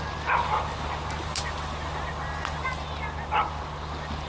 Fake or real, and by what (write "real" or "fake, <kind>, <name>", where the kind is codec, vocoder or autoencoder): real